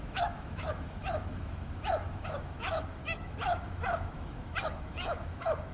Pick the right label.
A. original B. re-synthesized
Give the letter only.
B